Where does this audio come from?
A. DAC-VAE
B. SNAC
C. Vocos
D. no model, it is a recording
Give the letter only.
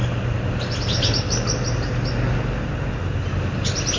D